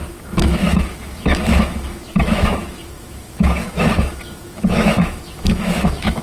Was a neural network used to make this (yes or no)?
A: yes